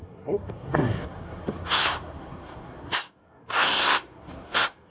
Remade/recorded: remade